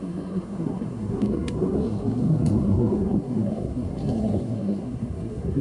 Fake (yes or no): yes